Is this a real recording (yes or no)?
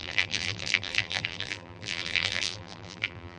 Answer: no